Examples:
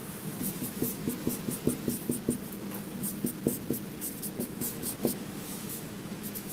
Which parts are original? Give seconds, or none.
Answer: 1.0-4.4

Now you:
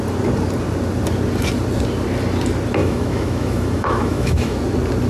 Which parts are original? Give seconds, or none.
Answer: 0.0-2.8; 4.6-5.1